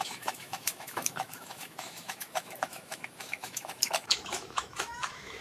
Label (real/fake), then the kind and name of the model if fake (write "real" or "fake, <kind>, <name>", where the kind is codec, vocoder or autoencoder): fake, autoencoder, DAC-VAE